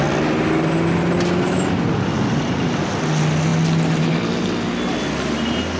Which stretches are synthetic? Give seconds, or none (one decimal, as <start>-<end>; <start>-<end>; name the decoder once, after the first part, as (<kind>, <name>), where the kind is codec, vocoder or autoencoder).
none